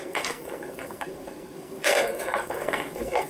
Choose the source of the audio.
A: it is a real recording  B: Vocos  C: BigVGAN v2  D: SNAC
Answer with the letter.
D